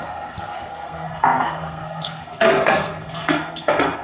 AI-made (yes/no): yes